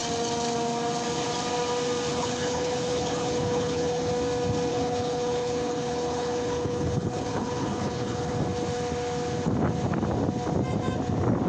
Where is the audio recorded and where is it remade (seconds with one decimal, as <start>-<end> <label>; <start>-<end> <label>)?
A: 0.0-2.1 recorded; 2.1-4.1 remade; 4.1-4.7 recorded; 4.7-8.3 remade; 8.3-11.5 recorded

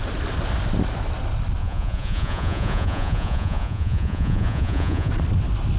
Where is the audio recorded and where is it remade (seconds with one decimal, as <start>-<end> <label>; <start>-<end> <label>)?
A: 0.0-1.6 recorded; 1.6-5.1 remade; 5.1-5.8 recorded